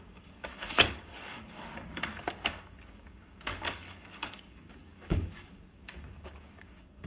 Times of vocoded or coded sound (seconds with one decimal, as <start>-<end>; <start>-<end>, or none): 0.0-7.1